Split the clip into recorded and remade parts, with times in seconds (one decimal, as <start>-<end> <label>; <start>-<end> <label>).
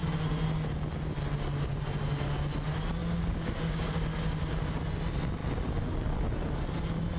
0.0-3.0 recorded; 3.0-3.9 remade; 3.9-7.2 recorded